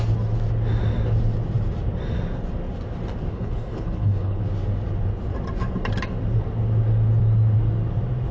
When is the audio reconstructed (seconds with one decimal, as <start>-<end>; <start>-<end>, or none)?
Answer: 3.3-4.4